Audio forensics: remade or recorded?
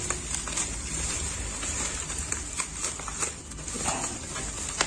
recorded